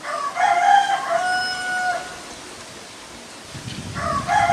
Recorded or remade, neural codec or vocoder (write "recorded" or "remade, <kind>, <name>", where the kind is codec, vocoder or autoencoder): recorded